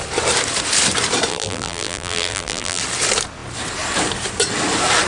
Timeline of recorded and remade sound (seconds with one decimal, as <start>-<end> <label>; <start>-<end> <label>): 0.0-1.3 recorded; 1.3-2.8 remade; 2.8-5.1 recorded